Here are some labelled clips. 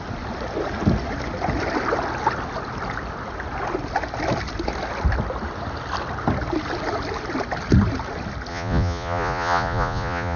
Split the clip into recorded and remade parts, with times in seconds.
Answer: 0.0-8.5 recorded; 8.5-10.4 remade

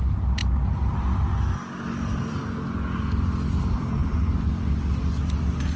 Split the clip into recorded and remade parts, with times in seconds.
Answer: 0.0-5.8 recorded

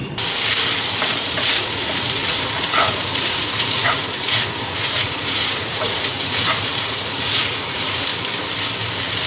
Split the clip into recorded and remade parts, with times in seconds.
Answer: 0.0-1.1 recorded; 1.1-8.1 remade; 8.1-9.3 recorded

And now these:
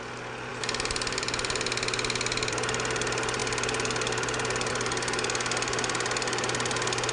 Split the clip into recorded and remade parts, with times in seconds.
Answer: 0.0-7.1 recorded

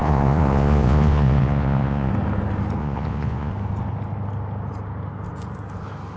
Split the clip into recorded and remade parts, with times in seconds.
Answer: 0.0-2.1 remade; 2.1-2.8 recorded; 2.8-3.5 remade; 3.5-6.2 recorded

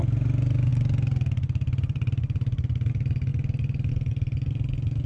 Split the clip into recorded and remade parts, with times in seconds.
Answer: 0.0-5.1 recorded

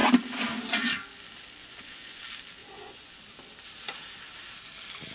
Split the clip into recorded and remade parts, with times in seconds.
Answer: 0.0-1.6 recorded; 1.6-2.2 remade; 2.2-2.6 recorded; 2.6-3.2 remade; 3.2-5.1 recorded

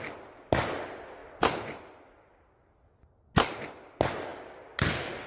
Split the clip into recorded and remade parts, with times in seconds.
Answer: 0.0-5.3 recorded